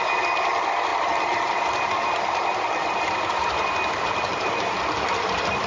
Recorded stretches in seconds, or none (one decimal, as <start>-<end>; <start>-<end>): 0.0-5.7